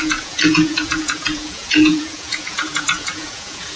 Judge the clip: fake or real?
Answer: fake